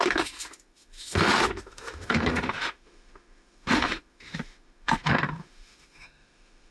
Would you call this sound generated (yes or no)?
yes